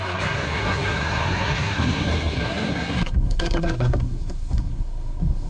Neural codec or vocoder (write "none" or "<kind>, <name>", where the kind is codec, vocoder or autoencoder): codec, SNAC